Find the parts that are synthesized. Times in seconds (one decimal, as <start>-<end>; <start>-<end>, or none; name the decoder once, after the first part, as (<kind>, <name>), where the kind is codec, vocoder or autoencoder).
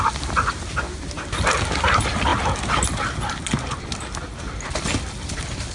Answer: none